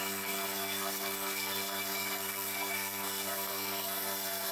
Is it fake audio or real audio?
fake